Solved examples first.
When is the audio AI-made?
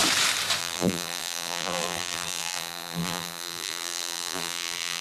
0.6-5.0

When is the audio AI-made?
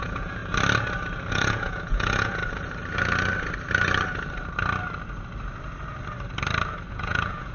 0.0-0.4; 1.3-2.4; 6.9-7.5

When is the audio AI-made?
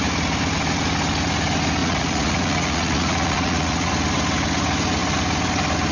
1.8-3.9